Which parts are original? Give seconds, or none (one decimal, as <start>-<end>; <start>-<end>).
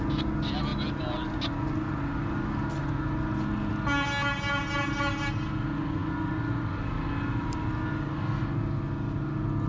0.0-9.7